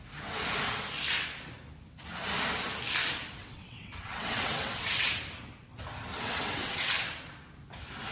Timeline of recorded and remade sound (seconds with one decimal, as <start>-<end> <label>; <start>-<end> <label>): 0.0-3.4 recorded; 3.4-5.1 remade; 5.1-6.1 recorded; 6.1-6.9 remade; 6.9-8.1 recorded